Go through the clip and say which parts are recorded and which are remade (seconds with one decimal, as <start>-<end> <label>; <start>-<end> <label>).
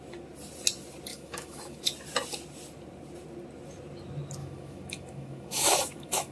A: 0.0-1.1 recorded; 1.1-1.8 remade; 1.8-4.4 recorded; 4.4-6.3 remade